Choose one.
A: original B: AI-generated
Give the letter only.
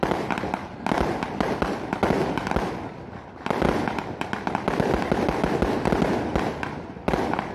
A